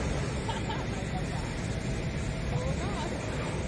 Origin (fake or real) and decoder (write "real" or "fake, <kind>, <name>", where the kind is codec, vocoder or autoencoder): real